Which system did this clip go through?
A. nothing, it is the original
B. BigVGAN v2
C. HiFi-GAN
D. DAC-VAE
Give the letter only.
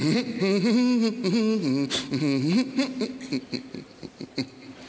A